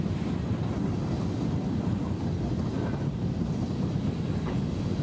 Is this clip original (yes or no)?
yes